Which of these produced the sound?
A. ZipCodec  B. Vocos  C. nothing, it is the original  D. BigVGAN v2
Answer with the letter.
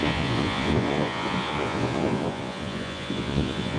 B